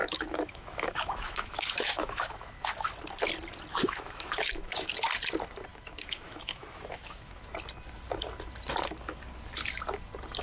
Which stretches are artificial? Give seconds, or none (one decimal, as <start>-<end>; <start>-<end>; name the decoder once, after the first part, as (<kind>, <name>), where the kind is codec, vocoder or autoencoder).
0.0-2.9 (autoencoder, DAC-VAE); 3.7-4.9; 5.7-7.5